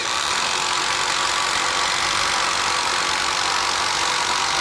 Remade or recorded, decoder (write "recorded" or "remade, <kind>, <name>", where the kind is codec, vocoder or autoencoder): recorded